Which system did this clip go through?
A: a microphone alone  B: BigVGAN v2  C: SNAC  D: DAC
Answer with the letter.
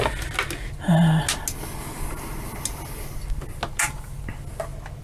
A